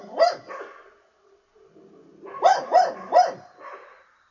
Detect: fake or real real